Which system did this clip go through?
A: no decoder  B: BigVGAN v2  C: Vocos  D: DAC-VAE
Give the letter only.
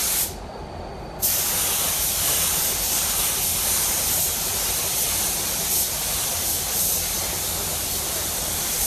B